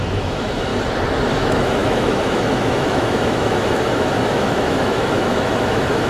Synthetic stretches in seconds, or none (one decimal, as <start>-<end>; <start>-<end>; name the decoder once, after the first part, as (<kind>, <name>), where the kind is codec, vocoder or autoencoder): 0.0-0.7 (autoencoder, DAC-VAE); 1.3-6.1